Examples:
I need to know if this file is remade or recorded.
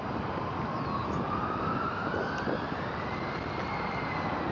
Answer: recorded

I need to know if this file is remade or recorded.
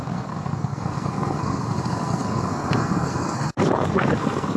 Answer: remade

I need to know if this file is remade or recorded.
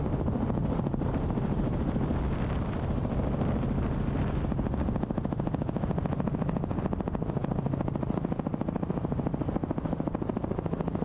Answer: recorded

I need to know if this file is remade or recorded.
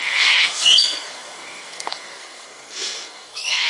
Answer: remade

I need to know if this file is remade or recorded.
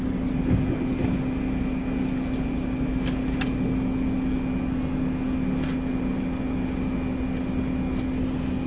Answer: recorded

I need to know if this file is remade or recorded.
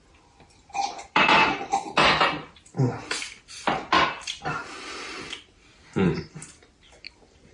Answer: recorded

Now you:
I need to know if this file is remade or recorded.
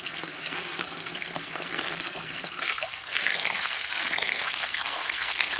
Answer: remade